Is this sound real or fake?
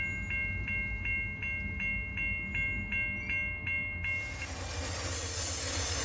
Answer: real